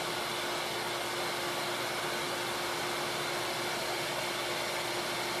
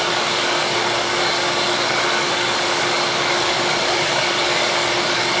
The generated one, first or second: second